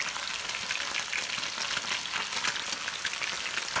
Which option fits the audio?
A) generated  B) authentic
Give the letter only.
B